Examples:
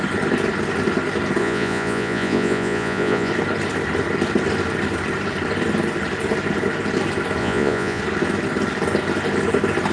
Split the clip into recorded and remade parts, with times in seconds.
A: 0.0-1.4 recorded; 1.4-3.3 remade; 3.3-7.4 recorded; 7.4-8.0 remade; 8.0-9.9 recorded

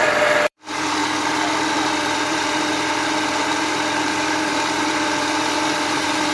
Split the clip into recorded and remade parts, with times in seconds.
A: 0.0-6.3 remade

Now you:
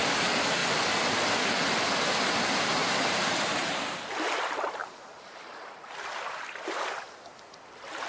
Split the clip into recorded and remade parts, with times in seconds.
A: 0.0-0.6 recorded; 0.6-1.2 remade; 1.2-2.8 recorded; 2.8-3.7 remade; 3.7-4.8 recorded; 4.8-6.4 remade; 6.4-8.1 recorded